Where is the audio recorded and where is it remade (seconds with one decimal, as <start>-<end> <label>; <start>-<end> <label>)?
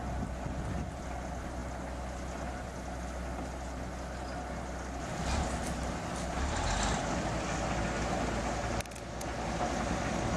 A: 0.0-10.4 recorded